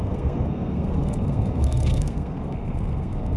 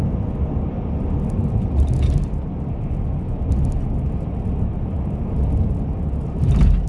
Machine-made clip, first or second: first